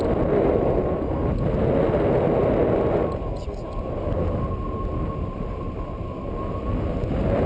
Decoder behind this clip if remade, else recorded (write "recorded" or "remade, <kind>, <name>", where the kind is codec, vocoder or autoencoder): recorded